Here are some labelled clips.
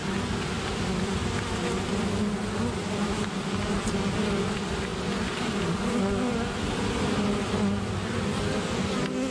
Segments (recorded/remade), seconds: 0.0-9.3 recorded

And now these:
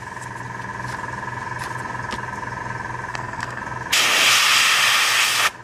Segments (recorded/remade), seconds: 0.0-3.1 recorded; 3.1-3.6 remade; 3.6-5.6 recorded

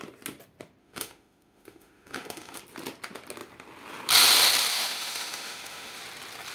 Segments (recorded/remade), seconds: 0.0-0.8 recorded; 0.8-2.6 remade; 2.6-4.7 recorded; 4.7-6.0 remade; 6.0-6.5 recorded

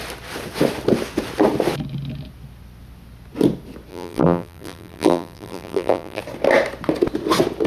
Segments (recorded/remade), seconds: 0.0-3.9 recorded; 3.9-6.2 remade; 6.2-7.7 recorded